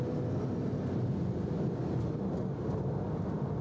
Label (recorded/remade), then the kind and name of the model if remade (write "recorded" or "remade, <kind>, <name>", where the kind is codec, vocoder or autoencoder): recorded